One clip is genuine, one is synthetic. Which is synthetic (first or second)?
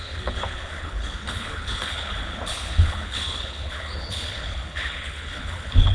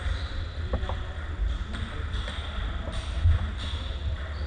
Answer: first